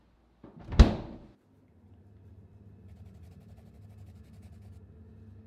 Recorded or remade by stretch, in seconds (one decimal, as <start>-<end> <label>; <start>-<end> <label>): 0.0-5.5 recorded